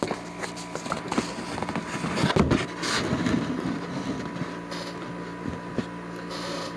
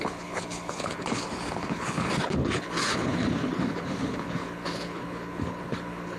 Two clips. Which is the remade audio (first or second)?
second